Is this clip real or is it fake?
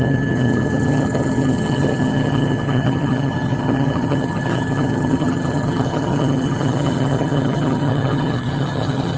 fake